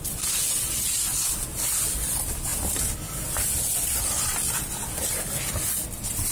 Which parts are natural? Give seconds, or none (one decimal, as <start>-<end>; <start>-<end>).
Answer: 0.0-6.3